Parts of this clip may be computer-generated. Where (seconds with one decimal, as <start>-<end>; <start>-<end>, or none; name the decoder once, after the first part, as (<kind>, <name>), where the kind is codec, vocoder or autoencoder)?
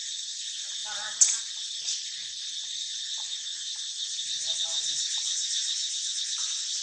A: 5.8-6.8 (vocoder, BigVGAN v2)